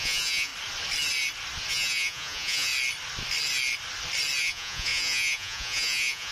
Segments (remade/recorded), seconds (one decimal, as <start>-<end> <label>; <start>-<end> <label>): 0.0-0.5 remade; 0.5-1.7 recorded; 1.7-2.7 remade; 2.7-4.4 recorded; 4.4-6.3 remade